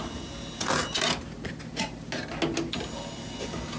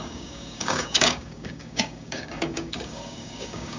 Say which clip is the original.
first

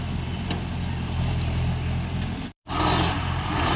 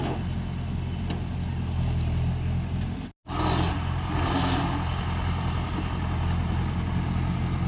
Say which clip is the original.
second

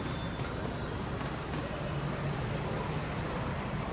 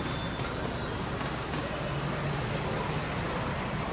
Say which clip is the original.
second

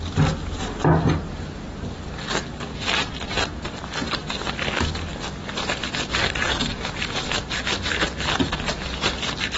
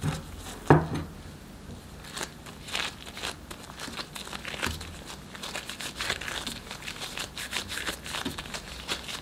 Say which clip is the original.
second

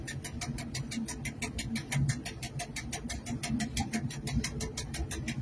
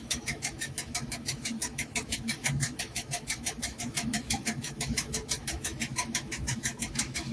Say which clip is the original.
first